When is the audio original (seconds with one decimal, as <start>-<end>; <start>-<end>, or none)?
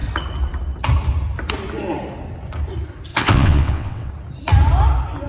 0.0-3.1; 4.1-5.3